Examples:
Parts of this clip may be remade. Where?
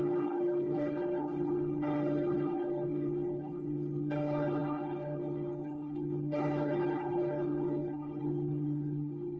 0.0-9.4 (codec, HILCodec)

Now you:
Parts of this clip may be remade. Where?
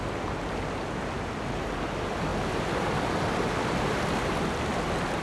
none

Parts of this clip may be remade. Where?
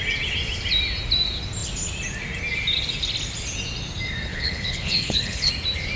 4.3-5.5 (codec, HILCodec)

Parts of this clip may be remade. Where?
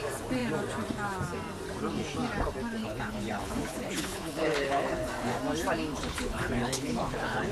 2.8-5.1 (codec, HILCodec); 5.9-7.5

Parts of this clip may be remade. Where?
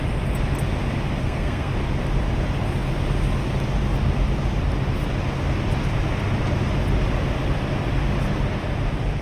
1.2-1.7 (codec, SNAC)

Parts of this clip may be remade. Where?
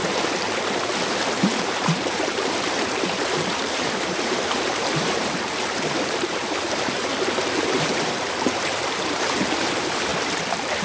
1.1-10.1 (vocoder, BigVGAN v2)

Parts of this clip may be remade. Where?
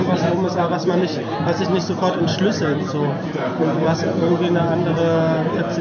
none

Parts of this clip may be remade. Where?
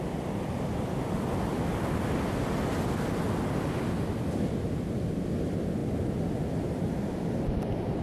none